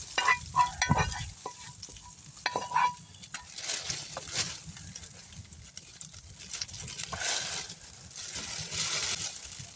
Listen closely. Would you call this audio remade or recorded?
recorded